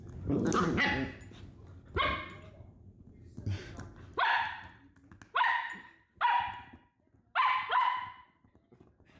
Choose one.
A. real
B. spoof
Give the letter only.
A